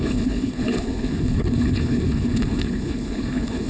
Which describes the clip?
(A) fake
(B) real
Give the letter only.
A